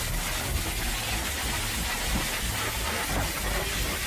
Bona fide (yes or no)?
yes